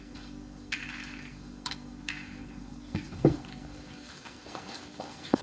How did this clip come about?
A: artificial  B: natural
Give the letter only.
A